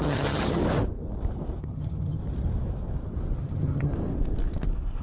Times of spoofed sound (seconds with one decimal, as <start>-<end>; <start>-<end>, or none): 0.0-0.6; 1.6-2.2; 3.4-3.9